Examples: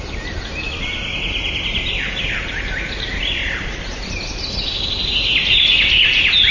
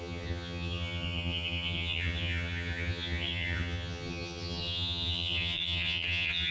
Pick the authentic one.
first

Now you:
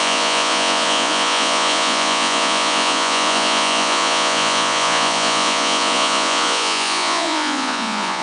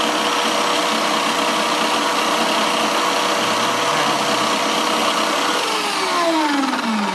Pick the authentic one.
second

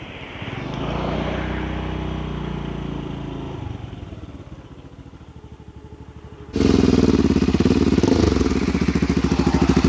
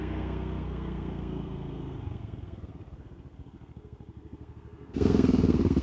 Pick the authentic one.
first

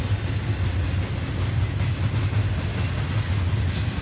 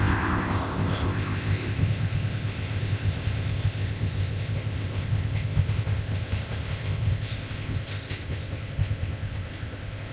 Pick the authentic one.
first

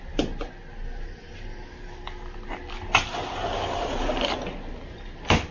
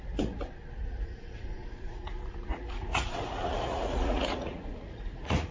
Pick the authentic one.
first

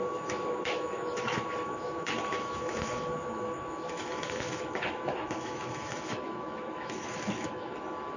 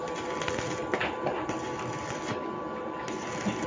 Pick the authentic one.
second